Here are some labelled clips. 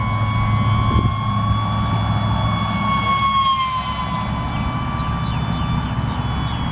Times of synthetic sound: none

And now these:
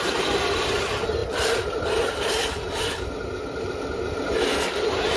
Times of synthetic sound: none

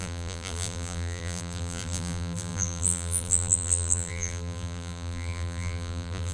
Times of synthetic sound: 0.0-6.3 (vocoder, BigVGAN v2)